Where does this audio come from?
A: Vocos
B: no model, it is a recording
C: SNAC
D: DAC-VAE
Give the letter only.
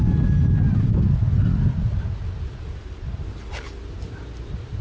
B